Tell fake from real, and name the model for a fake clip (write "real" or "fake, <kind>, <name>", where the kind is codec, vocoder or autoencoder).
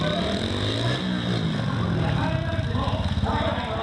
real